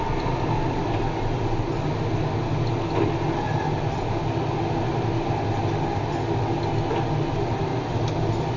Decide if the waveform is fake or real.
real